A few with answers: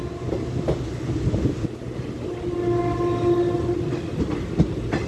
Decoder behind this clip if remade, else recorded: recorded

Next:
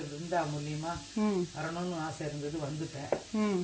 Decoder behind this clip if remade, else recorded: recorded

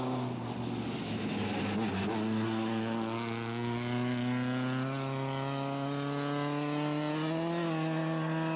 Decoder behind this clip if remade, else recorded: recorded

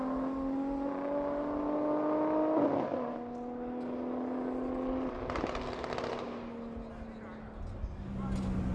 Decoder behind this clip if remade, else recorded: recorded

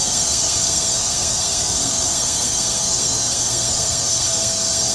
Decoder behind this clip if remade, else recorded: remade, codec, SNAC